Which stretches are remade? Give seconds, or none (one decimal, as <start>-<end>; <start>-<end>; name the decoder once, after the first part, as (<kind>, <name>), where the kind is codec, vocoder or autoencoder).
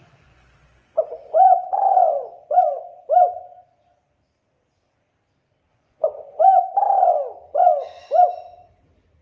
0.0-3.0 (vocoder, Vocos); 5.7-6.4